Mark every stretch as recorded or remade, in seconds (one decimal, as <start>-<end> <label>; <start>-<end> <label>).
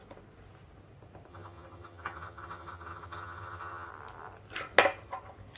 0.0-1.3 recorded; 1.3-3.9 remade; 3.9-5.6 recorded